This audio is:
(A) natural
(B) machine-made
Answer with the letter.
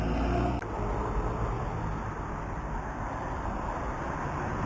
A